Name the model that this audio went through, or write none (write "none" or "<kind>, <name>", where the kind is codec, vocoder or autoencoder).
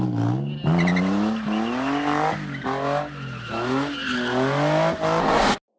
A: none